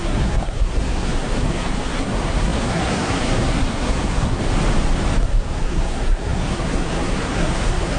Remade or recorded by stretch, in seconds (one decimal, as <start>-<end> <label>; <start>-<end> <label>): 0.0-4.4 remade; 4.4-5.2 recorded; 5.2-8.0 remade